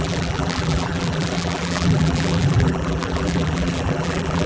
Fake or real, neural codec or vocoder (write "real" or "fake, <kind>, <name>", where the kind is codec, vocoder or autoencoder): fake, vocoder, BigVGAN v2